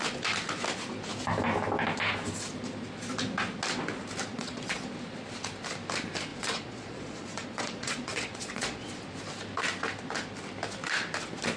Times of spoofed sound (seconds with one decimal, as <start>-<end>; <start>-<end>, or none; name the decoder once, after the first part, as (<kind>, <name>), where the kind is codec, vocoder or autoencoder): 4.3-4.8 (vocoder, Vocos); 6.3-8.9

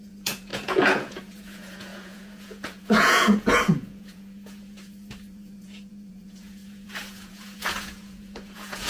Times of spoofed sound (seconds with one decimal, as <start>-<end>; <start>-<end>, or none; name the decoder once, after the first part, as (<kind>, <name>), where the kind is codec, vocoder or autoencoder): 0.0-8.9 (vocoder, Vocos)

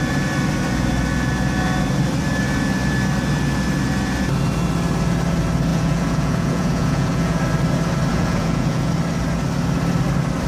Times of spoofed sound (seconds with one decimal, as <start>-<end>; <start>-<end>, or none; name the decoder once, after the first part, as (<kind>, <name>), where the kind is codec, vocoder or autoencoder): 5.7-7.4 (vocoder, Vocos); 8.1-8.9

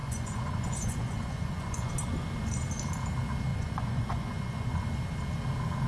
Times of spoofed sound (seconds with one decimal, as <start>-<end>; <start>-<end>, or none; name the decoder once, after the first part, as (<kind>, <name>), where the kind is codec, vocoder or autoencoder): 0.0-1.9 (vocoder, Vocos); 3.5-4.8

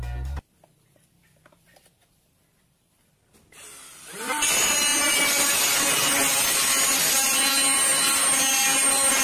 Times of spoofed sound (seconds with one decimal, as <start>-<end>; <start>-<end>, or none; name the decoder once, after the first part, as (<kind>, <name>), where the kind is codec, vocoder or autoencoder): none

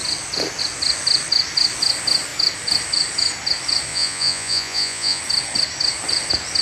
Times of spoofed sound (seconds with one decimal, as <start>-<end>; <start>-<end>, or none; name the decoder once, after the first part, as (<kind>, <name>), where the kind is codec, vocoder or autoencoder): 3.9-5.2 (vocoder, Vocos)